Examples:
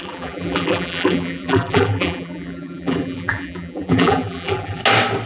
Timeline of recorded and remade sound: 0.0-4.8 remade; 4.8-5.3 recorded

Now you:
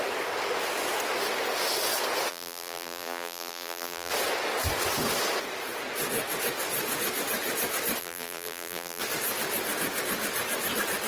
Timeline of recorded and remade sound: 0.0-2.3 recorded; 2.3-4.1 remade; 4.1-8.0 recorded; 8.0-9.0 remade; 9.0-11.1 recorded

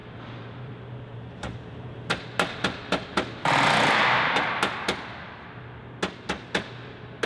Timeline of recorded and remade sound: 0.0-2.1 remade; 2.1-7.3 recorded